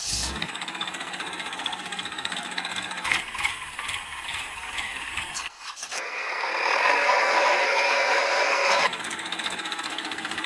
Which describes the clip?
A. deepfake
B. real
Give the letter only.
A